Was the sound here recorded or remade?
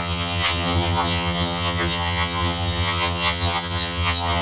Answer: remade